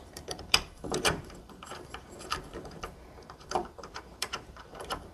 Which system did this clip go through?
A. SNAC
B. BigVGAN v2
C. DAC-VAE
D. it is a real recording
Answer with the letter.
B